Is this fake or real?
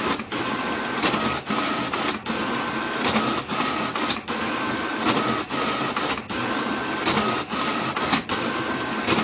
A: real